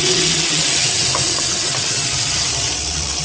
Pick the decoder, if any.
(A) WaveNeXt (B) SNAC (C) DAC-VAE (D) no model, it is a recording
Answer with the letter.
A